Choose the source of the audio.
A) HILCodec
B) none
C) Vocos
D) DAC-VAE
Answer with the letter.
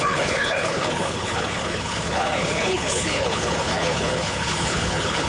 A